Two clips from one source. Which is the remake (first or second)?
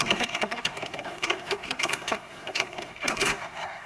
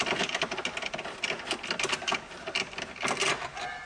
first